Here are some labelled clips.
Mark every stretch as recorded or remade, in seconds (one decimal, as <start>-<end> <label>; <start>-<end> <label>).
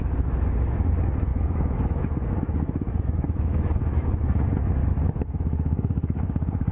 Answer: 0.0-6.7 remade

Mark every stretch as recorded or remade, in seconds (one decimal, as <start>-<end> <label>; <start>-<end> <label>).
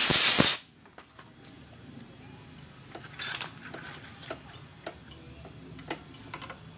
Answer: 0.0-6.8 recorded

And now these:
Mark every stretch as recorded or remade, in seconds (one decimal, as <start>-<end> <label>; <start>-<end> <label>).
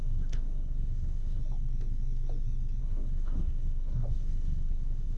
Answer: 0.0-1.4 remade; 1.4-2.8 recorded; 2.8-5.2 remade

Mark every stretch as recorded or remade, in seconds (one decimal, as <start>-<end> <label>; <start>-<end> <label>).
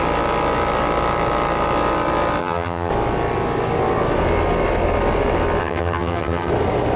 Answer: 0.0-2.4 recorded; 2.4-2.9 remade; 2.9-5.6 recorded; 5.6-6.5 remade; 6.5-7.0 recorded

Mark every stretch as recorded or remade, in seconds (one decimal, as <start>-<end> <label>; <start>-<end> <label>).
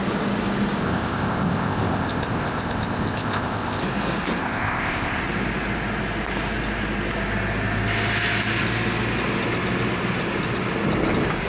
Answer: 0.0-0.8 recorded; 0.8-3.8 remade; 3.8-4.4 recorded; 4.4-5.2 remade; 5.2-11.5 recorded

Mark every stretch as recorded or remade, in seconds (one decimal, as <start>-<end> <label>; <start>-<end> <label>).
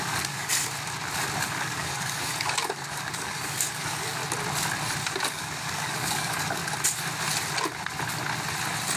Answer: 0.0-0.5 remade; 0.5-1.4 recorded; 1.4-4.2 remade; 4.2-5.3 recorded; 5.3-6.6 remade; 6.6-9.0 recorded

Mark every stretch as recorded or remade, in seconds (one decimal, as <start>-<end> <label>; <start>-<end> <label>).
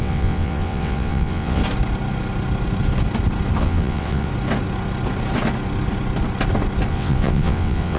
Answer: 0.0-1.6 remade; 1.6-3.6 recorded; 3.6-4.3 remade; 4.3-6.9 recorded; 6.9-8.0 remade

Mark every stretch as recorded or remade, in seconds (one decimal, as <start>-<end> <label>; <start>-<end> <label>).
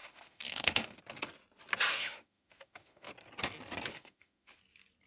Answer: 0.0-1.0 remade; 1.0-1.9 recorded; 1.9-3.1 remade; 3.1-3.9 recorded; 3.9-4.6 remade; 4.6-5.1 recorded